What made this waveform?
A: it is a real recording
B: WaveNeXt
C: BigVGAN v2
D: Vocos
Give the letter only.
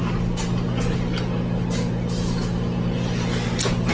A